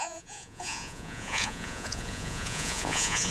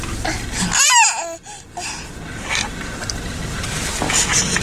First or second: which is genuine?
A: second